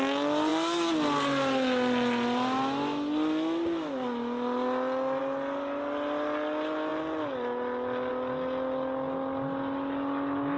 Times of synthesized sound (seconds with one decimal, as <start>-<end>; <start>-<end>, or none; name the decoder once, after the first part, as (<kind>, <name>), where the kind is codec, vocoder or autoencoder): none

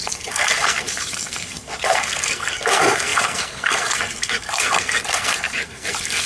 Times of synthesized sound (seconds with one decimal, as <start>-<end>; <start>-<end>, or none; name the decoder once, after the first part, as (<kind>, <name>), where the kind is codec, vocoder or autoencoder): 0.0-6.3 (codec, SNAC)

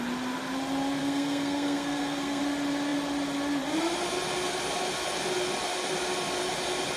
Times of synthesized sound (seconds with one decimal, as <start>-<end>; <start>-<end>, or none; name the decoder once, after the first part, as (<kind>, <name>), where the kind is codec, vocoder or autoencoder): 1.0-2.4 (codec, SNAC)

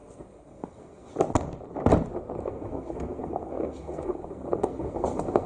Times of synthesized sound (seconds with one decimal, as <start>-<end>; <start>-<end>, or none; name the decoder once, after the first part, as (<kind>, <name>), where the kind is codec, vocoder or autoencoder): 0.0-1.1 (codec, SNAC); 2.4-5.5